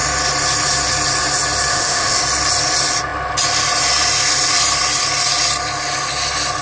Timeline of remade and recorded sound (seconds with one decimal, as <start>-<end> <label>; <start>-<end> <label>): 0.0-1.7 recorded; 1.7-2.2 remade; 2.2-6.6 recorded